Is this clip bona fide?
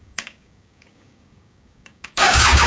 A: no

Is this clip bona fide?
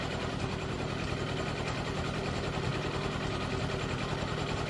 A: yes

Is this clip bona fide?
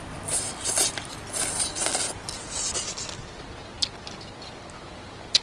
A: yes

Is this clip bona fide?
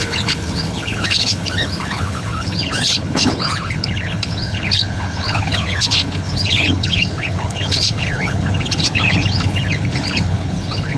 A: no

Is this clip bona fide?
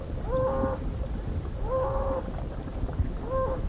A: yes